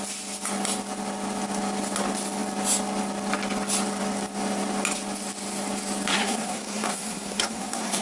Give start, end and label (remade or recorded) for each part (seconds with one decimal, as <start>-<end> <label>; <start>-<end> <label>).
0.0-6.1 recorded; 6.1-8.0 remade